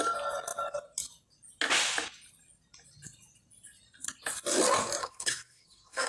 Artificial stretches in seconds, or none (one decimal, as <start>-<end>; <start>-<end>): 5.0-6.1